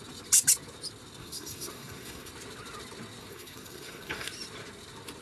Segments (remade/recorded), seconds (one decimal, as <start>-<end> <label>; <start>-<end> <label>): 0.0-1.2 recorded; 1.2-2.3 remade; 2.3-3.2 recorded; 3.2-4.3 remade; 4.3-5.2 recorded